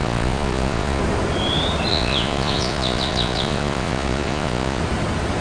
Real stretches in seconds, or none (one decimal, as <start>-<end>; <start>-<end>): 1.0-1.9; 4.8-5.4